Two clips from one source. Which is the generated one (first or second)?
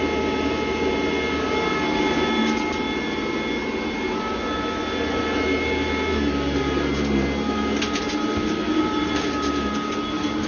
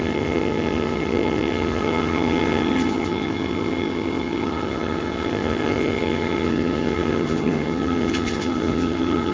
second